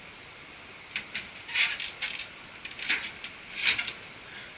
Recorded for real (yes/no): yes